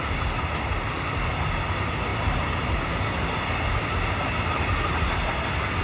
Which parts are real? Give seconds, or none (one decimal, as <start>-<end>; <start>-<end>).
0.0-5.8